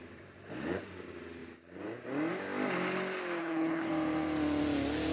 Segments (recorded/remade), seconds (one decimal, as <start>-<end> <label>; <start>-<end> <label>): 0.0-3.4 recorded; 3.4-3.9 remade; 3.9-5.1 recorded